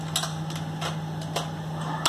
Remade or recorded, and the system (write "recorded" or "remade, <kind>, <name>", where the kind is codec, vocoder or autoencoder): recorded